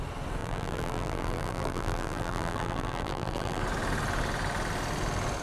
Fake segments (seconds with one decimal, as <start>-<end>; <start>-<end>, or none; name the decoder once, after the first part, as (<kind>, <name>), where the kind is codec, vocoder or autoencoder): 0.4-3.6 (vocoder, BigVGAN v2)